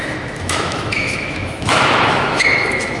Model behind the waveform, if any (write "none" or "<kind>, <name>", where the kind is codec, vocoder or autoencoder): autoencoder, DAC-VAE